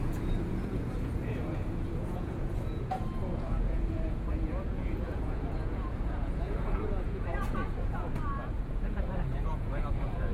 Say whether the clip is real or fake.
fake